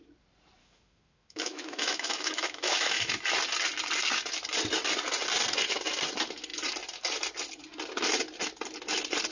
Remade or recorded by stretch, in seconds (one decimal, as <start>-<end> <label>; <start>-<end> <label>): 0.0-0.6 recorded; 0.6-3.2 remade; 3.2-9.3 recorded